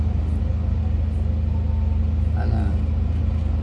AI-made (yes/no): no